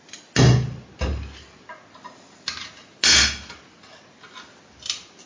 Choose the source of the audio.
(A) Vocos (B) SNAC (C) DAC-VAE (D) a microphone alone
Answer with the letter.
D